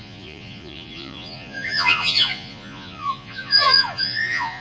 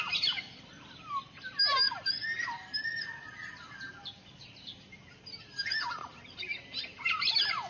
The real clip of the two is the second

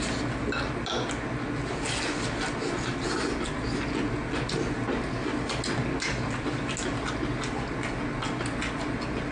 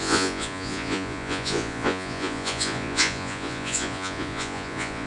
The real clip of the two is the first